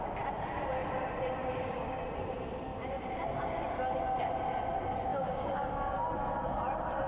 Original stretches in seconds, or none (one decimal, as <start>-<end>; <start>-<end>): 0.0-1.4; 2.0-5.1; 5.9-7.1